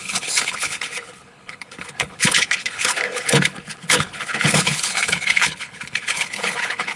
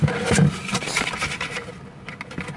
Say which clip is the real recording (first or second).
second